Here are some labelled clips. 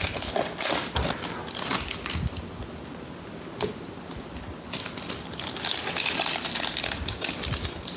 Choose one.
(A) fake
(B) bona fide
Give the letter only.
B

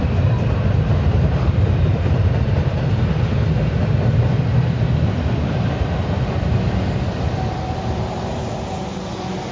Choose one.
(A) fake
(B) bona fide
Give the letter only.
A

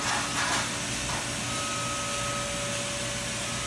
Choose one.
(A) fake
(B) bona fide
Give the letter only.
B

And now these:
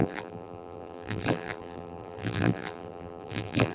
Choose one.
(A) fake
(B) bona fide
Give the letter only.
A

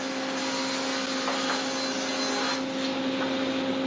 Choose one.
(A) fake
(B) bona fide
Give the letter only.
B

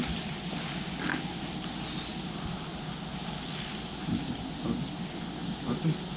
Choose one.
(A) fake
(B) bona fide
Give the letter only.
B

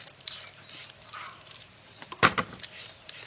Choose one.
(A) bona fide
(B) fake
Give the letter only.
B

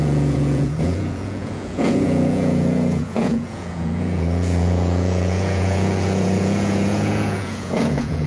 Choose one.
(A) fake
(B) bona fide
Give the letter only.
A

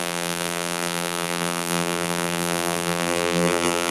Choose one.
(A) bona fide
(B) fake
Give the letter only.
B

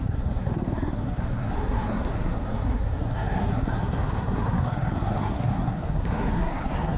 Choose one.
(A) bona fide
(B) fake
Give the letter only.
B